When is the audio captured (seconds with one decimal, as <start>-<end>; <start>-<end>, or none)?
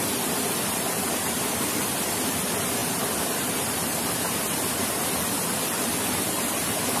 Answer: 0.0-7.0